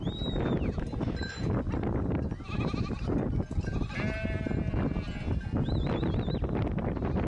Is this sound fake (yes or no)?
no